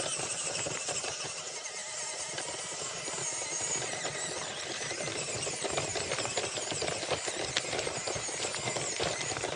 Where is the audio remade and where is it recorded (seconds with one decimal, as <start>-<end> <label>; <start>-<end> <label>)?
0.0-5.9 remade; 5.9-9.1 recorded; 9.1-9.6 remade